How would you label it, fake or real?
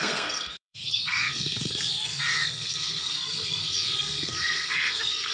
fake